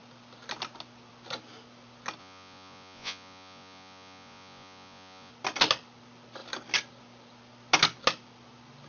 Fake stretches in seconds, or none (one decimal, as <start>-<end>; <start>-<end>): 2.2-5.3

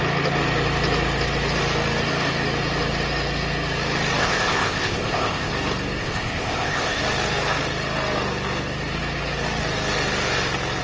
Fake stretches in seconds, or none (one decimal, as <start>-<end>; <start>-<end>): 4.2-5.5; 6.0-7.0

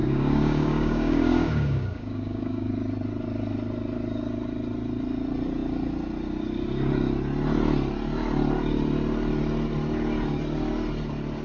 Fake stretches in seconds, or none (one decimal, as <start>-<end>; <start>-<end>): 0.0-2.7

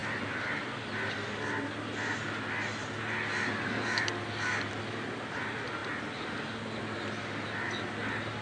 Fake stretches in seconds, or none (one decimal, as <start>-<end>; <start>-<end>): none

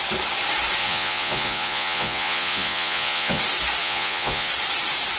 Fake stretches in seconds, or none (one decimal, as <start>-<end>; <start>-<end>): 0.8-3.4; 3.8-4.5

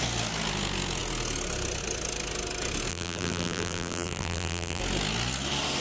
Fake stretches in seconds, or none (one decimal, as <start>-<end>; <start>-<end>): 2.9-4.8

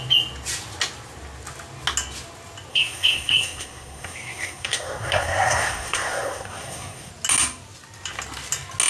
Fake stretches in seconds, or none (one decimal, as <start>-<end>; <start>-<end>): 2.7-7.1